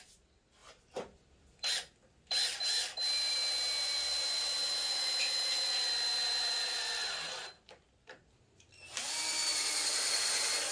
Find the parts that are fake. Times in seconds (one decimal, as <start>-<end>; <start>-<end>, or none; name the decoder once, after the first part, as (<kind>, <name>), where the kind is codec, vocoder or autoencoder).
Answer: 0.6-1.7 (vocoder, BigVGAN v2); 9.3-10.7